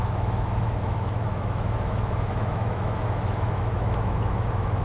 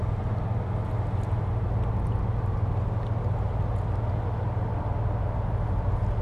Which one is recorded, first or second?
second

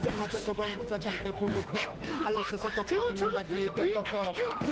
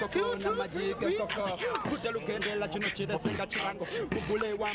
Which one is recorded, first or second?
second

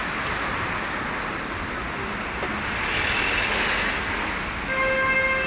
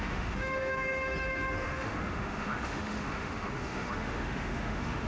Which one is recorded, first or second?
first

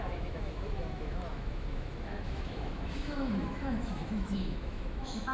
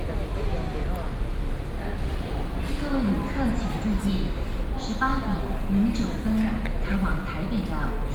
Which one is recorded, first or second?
second